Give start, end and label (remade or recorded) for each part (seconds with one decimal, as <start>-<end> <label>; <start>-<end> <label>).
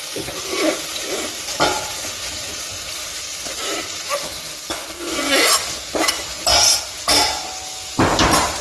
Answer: 0.0-8.6 recorded